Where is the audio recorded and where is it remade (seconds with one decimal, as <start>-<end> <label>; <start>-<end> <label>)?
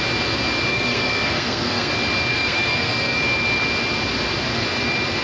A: 0.0-0.7 recorded; 0.7-1.9 remade; 1.9-2.3 recorded; 2.3-3.2 remade; 3.2-5.2 recorded